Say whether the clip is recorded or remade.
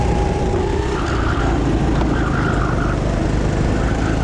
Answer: recorded